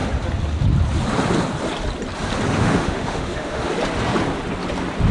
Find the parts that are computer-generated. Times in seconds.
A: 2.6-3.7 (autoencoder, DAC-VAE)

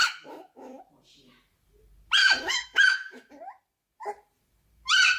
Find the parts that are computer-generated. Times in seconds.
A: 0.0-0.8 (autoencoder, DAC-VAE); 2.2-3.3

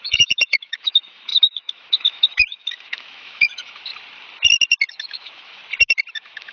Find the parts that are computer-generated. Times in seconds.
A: 0.0-3.9 (autoencoder, DAC-VAE); 4.9-5.6; 6.1-6.5